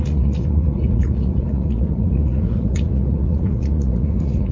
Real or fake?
fake